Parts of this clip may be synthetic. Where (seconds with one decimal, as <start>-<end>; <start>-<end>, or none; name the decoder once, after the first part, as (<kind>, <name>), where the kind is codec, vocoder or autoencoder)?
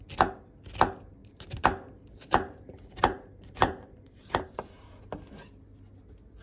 1.2-5.0 (vocoder, BigVGAN v2)